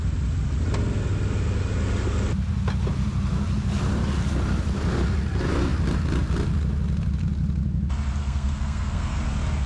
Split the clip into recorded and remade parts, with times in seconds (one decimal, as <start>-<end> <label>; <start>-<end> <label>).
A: 0.0-8.2 recorded; 8.2-9.2 remade; 9.2-9.7 recorded